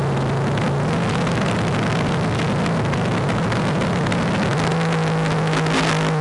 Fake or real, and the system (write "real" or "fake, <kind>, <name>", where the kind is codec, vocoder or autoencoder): real